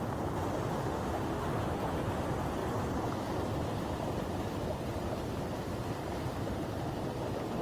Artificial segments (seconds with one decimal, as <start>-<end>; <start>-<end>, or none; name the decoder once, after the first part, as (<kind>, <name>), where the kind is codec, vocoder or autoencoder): 0.8-1.5 (autoencoder, DAC-VAE)